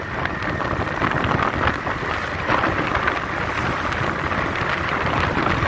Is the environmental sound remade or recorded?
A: recorded